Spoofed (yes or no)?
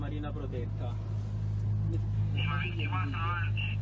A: no